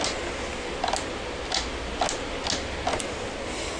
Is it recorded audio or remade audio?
recorded